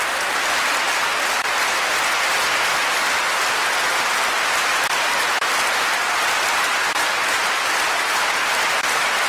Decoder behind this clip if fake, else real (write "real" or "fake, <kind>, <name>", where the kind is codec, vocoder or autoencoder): real